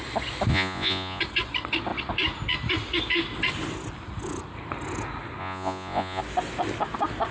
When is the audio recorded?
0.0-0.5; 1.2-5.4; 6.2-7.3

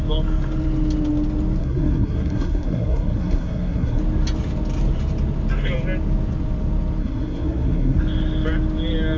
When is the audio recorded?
0.0-1.6; 4.0-7.0; 8.0-9.2

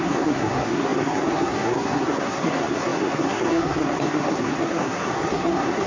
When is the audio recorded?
none

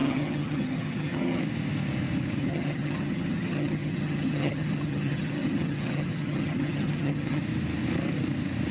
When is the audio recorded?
1.4-2.4; 7.4-8.7

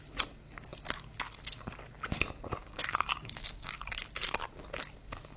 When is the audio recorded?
0.0-2.6; 3.8-5.4

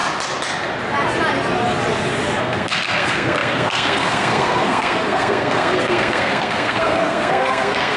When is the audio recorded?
0.0-2.4